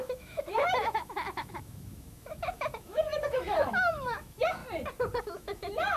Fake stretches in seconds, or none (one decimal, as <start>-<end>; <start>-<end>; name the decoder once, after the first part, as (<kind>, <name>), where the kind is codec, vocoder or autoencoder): 0.0-4.6 (autoencoder, DAC-VAE); 5.2-6.0